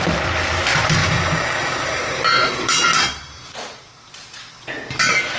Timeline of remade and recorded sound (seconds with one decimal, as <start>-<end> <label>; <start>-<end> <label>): 0.0-1.0 recorded; 1.0-2.2 remade; 2.2-5.4 recorded